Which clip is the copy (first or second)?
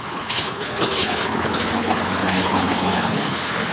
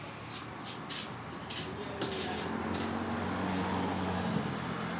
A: first